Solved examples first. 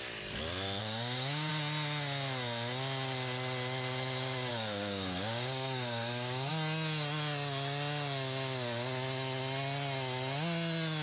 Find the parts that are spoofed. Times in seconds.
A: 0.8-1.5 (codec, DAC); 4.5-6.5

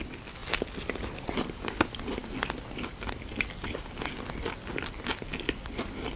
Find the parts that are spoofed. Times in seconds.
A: none

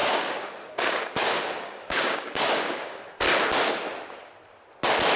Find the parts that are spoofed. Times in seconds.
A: 0.0-3.1 (codec, DAC)

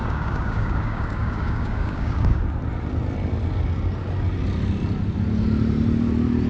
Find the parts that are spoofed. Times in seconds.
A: 0.0-2.4 (codec, DAC)

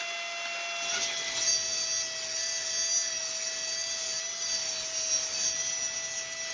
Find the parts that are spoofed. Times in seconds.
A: none

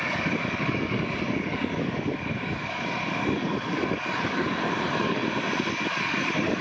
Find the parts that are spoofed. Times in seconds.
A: 0.0-5.2 (codec, DAC); 5.7-6.6

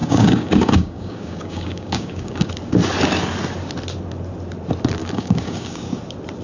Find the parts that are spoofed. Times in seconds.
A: 0.0-2.5 (codec, DAC); 5.0-6.0